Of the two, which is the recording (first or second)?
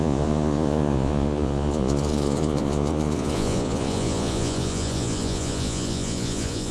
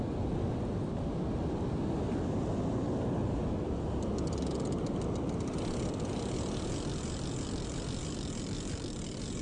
second